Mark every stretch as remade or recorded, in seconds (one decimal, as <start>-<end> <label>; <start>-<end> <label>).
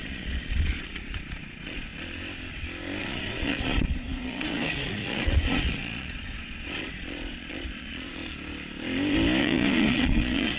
0.0-1.9 remade; 1.9-3.0 recorded; 3.0-8.2 remade; 8.2-9.4 recorded; 9.4-10.6 remade